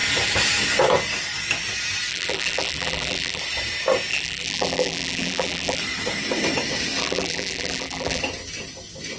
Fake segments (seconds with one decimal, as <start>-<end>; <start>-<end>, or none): 2.1-3.4; 4.1-5.8; 7.0-8.2